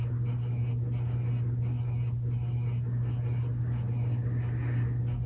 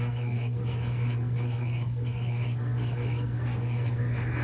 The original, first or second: first